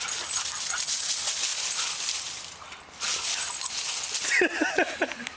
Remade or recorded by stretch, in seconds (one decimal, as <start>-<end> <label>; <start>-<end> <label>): 0.0-5.4 recorded